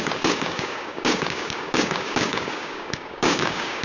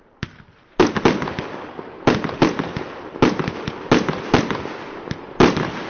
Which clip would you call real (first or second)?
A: second